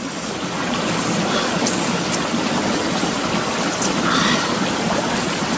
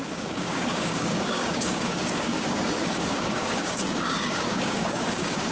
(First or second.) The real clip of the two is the first